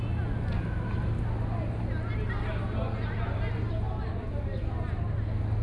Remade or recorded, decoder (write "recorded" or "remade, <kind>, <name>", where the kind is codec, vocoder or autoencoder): recorded